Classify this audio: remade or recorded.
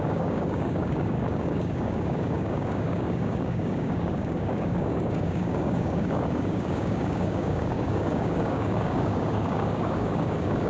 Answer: remade